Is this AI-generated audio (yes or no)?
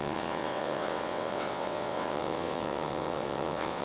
yes